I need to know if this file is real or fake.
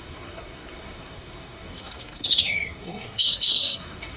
fake